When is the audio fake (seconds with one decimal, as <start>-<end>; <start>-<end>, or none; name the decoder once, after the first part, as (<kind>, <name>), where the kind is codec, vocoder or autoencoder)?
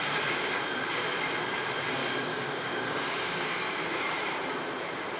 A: 2.0-3.8 (codec, DAC)